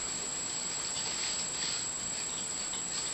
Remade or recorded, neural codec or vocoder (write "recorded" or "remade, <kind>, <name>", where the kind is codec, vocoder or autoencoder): remade, vocoder, BigVGAN v2